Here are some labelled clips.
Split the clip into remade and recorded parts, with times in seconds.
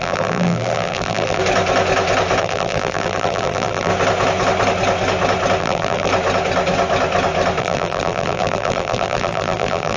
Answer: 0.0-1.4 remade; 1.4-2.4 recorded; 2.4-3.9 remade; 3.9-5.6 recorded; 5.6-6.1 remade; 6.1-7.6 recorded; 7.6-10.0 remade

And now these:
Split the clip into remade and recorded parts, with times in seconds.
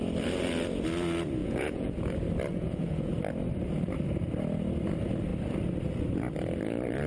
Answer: 0.0-1.4 recorded; 1.4-1.9 remade; 1.9-2.5 recorded; 2.5-3.1 remade; 3.1-7.1 recorded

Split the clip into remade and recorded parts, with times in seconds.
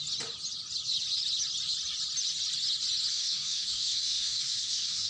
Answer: 0.0-3.1 recorded; 3.1-5.1 remade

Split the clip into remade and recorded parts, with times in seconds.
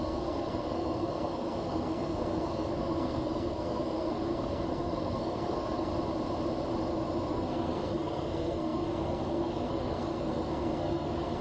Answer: 0.0-5.9 remade; 5.9-7.3 recorded; 7.3-11.4 remade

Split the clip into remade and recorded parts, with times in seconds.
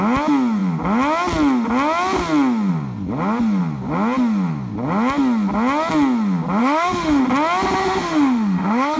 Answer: 0.0-6.6 recorded; 6.6-7.2 remade; 7.2-7.8 recorded; 7.8-9.0 remade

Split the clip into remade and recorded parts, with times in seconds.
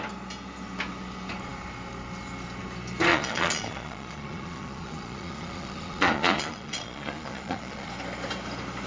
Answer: 0.0-3.1 recorded; 3.1-7.9 remade; 7.9-8.9 recorded